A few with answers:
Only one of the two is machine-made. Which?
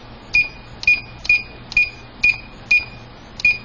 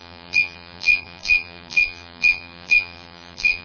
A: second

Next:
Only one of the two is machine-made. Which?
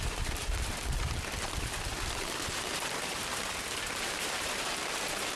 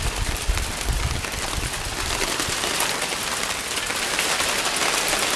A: first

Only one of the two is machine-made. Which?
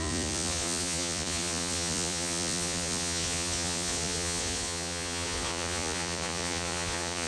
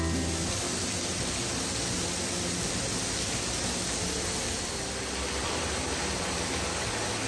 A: first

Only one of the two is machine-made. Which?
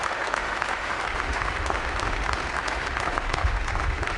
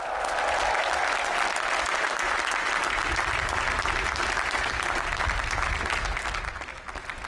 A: first